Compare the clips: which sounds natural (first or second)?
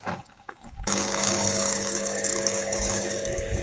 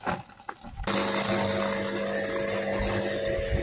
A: second